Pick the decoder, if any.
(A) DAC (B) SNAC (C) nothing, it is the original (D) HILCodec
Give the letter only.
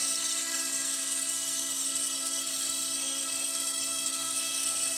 B